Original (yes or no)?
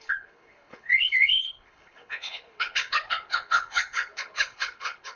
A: no